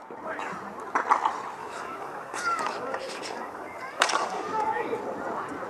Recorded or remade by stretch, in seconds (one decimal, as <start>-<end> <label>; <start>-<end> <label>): 0.0-1.6 recorded; 1.6-5.0 remade; 5.0-5.7 recorded